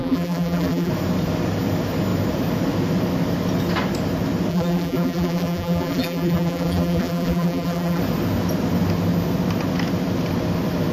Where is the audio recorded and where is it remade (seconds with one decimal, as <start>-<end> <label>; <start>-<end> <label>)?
0.0-0.9 remade; 0.9-4.5 recorded; 4.5-8.0 remade; 8.0-10.9 recorded